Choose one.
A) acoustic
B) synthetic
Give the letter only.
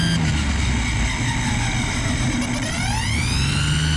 A